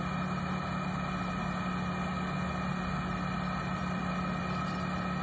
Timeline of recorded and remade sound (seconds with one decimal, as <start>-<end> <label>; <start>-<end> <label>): 0.0-5.2 recorded